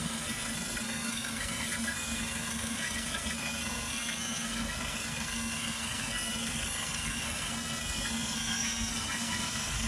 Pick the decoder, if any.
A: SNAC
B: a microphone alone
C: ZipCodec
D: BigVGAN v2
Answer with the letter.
A